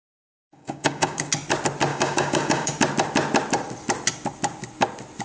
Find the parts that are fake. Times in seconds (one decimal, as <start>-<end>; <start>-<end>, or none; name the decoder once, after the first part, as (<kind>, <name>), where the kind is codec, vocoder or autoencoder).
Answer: 0.0-1.3 (codec, DAC); 1.9-2.7